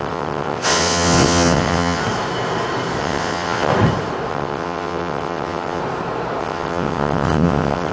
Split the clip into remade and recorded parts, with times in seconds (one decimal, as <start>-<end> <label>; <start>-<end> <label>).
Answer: 0.0-2.0 remade; 2.0-3.0 recorded; 3.0-3.7 remade; 3.7-4.3 recorded; 4.3-5.8 remade; 5.8-6.4 recorded; 6.4-7.9 remade